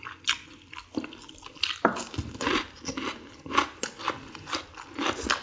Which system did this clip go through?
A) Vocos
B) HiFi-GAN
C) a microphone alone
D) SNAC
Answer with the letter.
C